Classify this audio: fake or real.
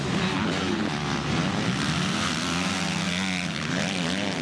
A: real